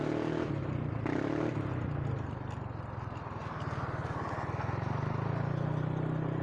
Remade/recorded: recorded